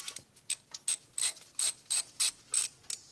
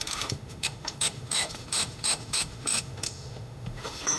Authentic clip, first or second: first